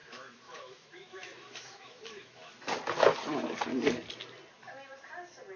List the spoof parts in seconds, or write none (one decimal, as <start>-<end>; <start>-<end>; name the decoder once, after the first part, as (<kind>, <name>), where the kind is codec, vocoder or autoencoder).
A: 0.0-2.5 (autoencoder, DAC-VAE)